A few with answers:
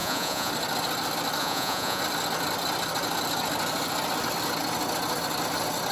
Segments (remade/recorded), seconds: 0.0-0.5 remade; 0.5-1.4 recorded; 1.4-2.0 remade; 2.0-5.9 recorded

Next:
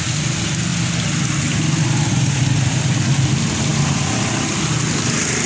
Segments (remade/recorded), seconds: 0.0-5.5 recorded

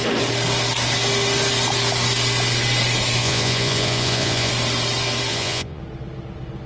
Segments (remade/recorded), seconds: 0.0-3.2 recorded; 3.2-4.5 remade; 4.5-5.3 recorded; 5.3-5.8 remade; 5.8-6.7 recorded